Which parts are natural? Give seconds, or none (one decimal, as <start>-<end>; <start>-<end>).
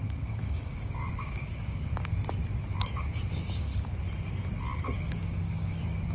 2.1-2.8; 3.7-5.0